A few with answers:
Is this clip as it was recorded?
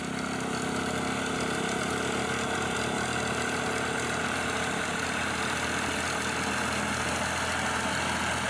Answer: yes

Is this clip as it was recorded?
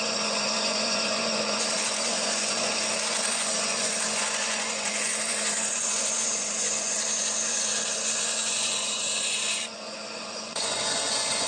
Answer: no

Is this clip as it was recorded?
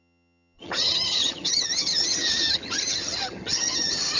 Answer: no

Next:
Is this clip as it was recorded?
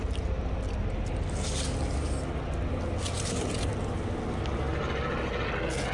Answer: yes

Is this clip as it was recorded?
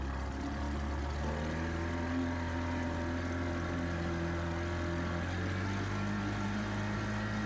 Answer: yes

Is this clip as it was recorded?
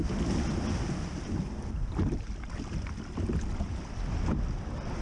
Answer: yes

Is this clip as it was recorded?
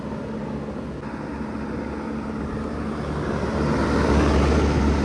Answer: yes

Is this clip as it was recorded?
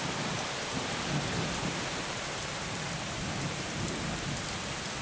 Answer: no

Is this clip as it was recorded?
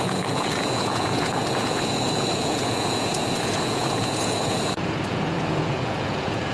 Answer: no